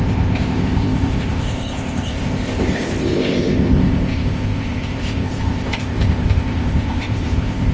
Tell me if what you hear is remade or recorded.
remade